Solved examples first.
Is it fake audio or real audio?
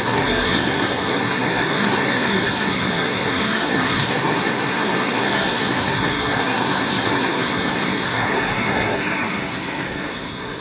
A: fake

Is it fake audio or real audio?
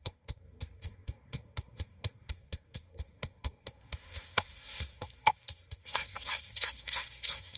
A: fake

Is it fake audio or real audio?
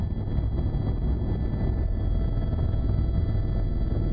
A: real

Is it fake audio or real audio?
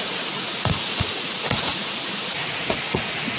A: fake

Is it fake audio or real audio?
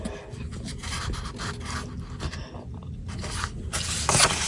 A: real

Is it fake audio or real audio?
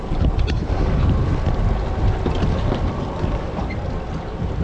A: real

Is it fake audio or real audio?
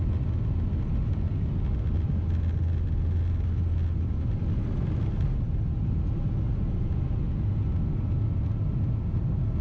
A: real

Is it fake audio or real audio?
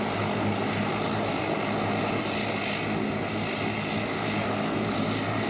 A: real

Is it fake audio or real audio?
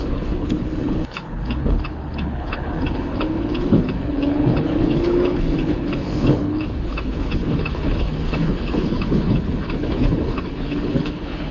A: fake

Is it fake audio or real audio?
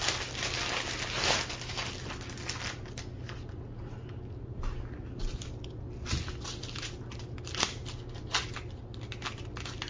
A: real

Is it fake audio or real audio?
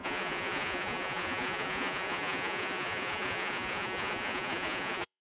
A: fake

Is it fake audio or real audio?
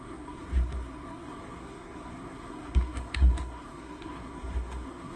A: fake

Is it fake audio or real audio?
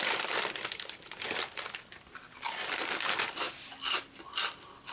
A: fake